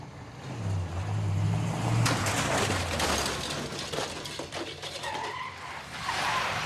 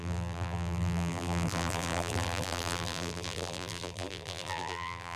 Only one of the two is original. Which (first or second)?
first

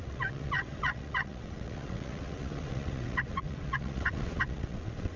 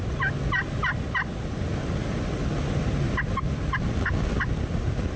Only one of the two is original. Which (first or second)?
second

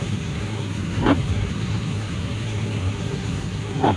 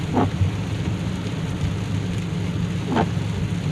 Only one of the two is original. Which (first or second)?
second